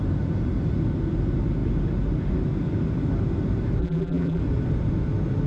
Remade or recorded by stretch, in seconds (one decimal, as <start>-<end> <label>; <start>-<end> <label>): 0.0-3.8 recorded; 3.8-4.4 remade; 4.4-5.5 recorded